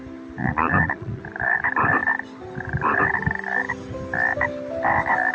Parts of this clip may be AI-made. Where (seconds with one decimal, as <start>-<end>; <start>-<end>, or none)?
0.4-1.2